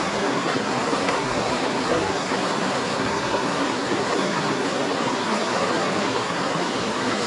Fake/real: fake